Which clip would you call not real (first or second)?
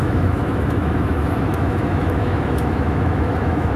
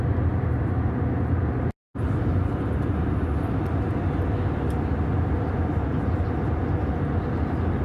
first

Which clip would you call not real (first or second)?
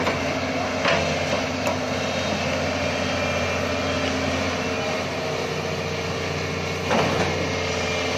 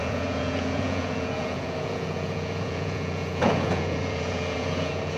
second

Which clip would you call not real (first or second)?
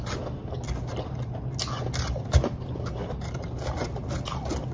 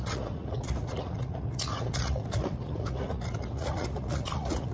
second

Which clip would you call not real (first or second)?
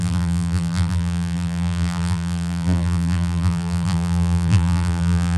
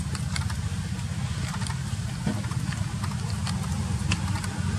first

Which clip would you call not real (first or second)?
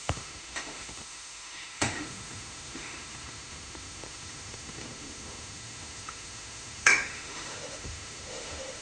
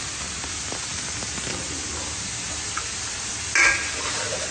first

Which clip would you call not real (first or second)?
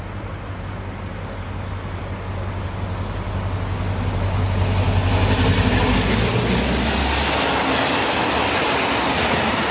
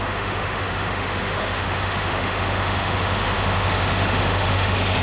second